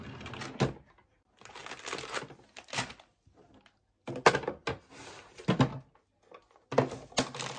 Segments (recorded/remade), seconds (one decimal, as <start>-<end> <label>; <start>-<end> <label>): 0.0-7.6 recorded